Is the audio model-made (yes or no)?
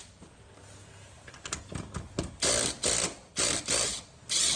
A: no